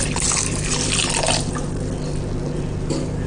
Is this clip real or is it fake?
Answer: real